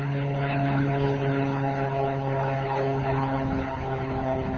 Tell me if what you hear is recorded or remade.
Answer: remade